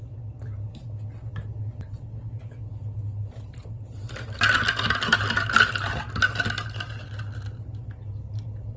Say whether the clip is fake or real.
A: real